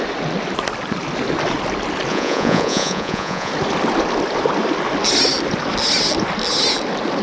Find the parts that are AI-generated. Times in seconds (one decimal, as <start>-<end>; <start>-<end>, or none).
2.1-3.5